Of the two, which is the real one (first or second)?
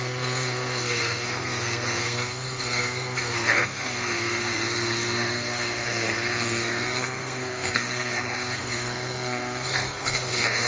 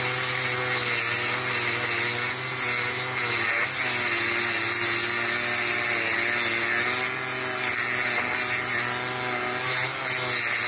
second